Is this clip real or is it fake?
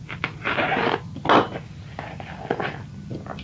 real